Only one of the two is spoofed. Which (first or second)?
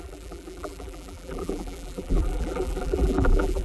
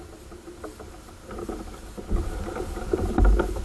first